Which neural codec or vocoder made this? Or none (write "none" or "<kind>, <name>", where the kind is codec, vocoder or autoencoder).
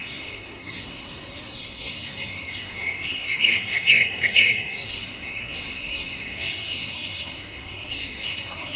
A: codec, SNAC